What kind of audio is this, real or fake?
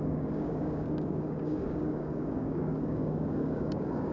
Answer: fake